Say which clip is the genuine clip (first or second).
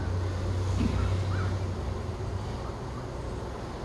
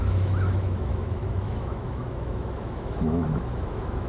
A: first